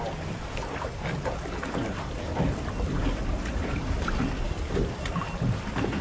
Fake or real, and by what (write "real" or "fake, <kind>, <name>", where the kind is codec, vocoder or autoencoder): fake, vocoder, BigVGAN v2